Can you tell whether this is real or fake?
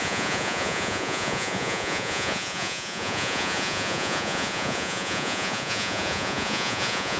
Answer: fake